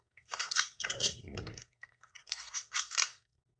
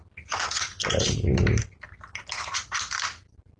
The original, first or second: second